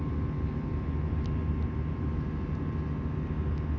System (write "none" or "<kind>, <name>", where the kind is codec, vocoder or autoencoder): none